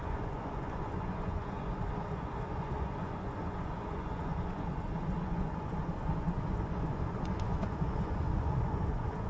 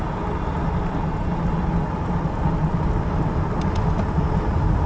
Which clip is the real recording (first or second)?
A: second